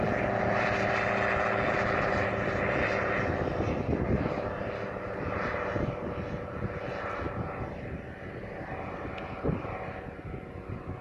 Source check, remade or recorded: recorded